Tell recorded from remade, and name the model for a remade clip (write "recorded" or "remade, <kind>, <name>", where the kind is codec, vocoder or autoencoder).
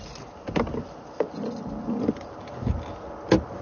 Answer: recorded